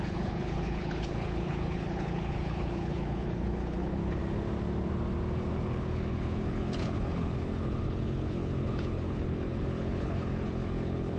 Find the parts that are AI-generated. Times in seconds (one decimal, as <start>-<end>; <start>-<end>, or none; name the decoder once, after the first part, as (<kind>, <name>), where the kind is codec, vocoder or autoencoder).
0.0-4.2 (codec, HILCodec); 5.5-11.2